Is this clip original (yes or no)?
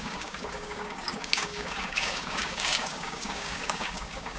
no